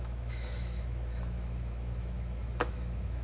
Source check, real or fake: fake